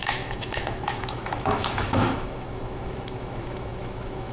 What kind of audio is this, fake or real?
fake